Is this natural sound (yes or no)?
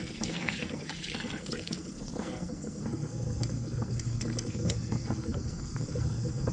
no